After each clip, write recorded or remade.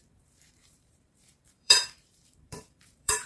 remade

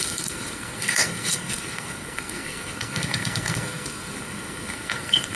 remade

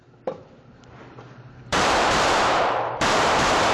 remade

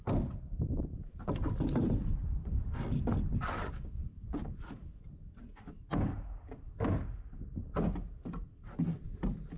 recorded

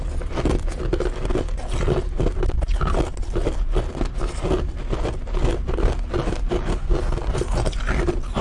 recorded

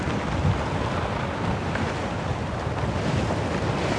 recorded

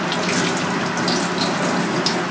recorded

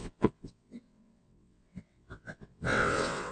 remade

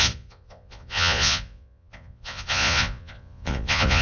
remade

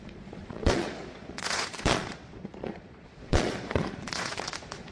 remade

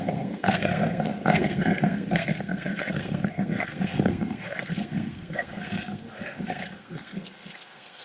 remade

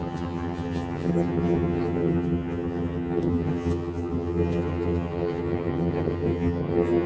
remade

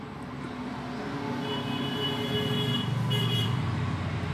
recorded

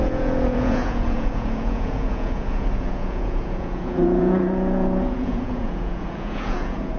remade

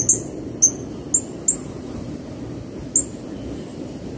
recorded